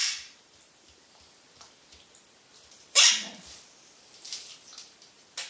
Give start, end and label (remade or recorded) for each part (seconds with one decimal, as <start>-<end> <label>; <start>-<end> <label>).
0.0-1.2 remade; 1.2-2.5 recorded; 2.5-3.0 remade; 3.0-5.5 recorded